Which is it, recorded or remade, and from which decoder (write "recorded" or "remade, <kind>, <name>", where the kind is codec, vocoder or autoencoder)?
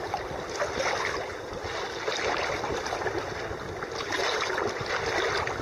recorded